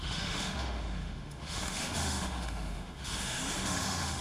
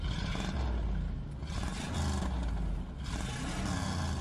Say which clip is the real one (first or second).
second